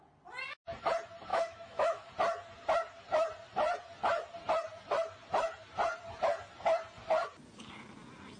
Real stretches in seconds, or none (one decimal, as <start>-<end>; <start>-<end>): 0.0-1.3; 2.1-8.4